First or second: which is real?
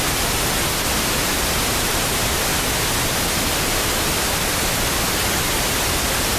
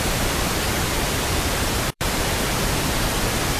first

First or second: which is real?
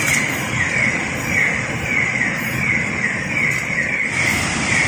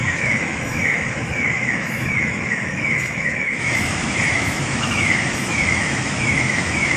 first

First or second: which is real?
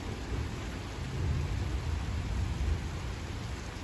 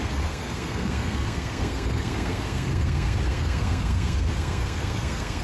first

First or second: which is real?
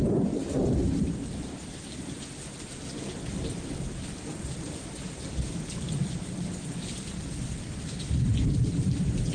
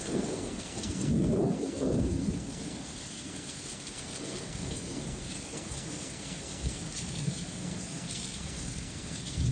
first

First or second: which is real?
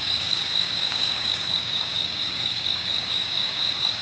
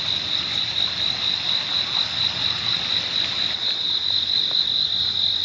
second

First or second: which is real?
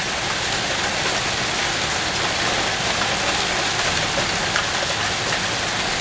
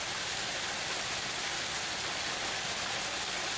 first